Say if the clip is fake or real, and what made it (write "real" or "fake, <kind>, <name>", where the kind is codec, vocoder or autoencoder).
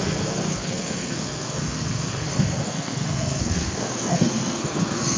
fake, codec, SNAC